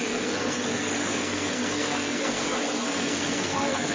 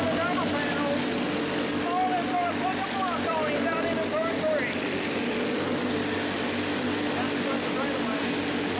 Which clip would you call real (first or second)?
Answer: second